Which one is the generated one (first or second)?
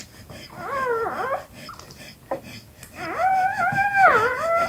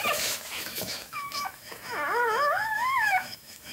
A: second